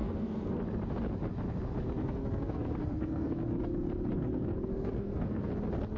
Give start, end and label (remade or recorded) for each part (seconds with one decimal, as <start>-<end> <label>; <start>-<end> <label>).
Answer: 0.0-0.6 remade; 0.6-2.0 recorded; 2.0-3.6 remade; 3.6-4.1 recorded; 4.1-5.5 remade; 5.5-6.0 recorded